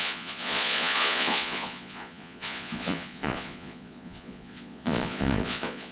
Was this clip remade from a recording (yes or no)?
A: yes